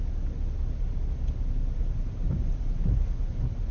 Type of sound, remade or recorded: recorded